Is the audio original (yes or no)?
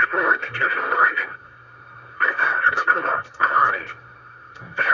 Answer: no